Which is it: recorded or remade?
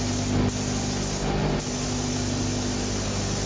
recorded